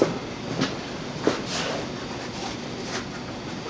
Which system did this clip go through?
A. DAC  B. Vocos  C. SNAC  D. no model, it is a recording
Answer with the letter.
D